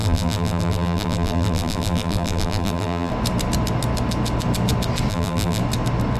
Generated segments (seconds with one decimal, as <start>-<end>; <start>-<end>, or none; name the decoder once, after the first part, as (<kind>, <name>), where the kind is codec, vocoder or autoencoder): 0.0-3.1 (vocoder, BigVGAN v2); 5.1-5.6